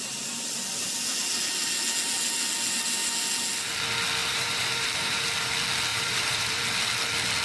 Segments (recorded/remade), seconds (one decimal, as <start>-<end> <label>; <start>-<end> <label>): 0.0-4.2 recorded; 4.2-5.5 remade; 5.5-5.9 recorded; 5.9-6.6 remade; 6.6-7.4 recorded